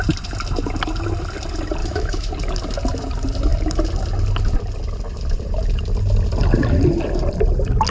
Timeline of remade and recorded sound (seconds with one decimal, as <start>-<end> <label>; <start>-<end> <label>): 0.0-1.8 recorded; 1.8-2.3 remade; 2.3-7.9 recorded

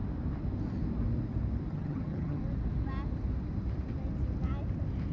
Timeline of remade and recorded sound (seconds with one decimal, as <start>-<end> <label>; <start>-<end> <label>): 0.0-1.7 recorded; 1.7-2.4 remade; 2.4-5.1 recorded